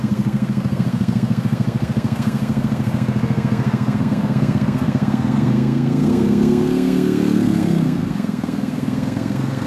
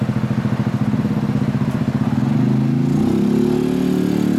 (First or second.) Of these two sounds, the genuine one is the second